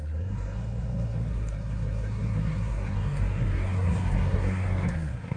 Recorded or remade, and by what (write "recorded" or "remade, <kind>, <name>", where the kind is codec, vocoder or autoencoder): remade, codec, SNAC